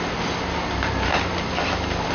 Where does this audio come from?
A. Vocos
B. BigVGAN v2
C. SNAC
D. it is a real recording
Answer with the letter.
B